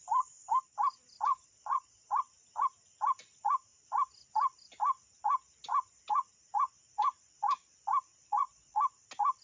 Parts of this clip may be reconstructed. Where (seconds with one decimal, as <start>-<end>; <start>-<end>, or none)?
1.3-2.2; 8.1-8.8